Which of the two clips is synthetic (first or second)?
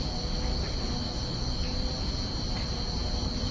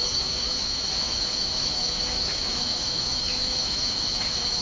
second